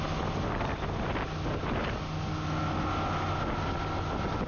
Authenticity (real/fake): real